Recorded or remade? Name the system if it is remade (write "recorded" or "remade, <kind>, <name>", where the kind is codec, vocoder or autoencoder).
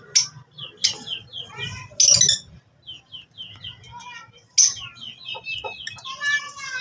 recorded